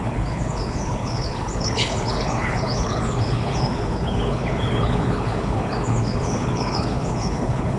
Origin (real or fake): fake